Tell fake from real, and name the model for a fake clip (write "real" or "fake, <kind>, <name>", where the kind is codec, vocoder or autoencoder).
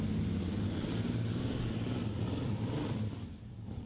real